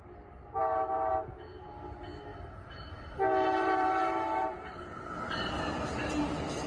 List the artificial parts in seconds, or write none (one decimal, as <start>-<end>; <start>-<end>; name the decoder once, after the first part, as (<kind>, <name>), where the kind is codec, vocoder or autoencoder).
0.6-1.1 (vocoder, BigVGAN v2); 2.3-6.1